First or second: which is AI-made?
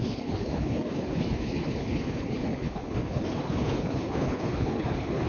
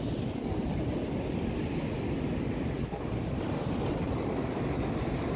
first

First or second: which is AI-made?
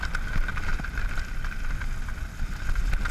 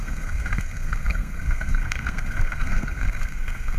second